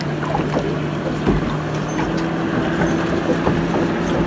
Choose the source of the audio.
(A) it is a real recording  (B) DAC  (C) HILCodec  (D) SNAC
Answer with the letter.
A